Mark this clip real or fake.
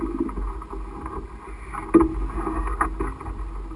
real